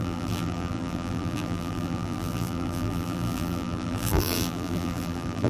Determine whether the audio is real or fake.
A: fake